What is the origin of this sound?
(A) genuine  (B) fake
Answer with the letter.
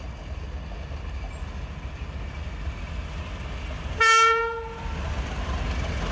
A